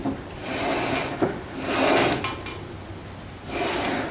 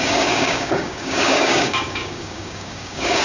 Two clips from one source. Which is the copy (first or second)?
second